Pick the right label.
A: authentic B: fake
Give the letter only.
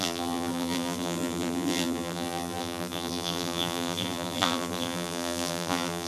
B